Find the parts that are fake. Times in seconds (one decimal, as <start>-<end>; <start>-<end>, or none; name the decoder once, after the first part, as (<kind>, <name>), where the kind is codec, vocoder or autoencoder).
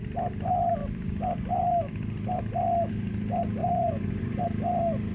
3.6-4.4 (vocoder, Vocos)